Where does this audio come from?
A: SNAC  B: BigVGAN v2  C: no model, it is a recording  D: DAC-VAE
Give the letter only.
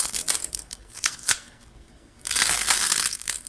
A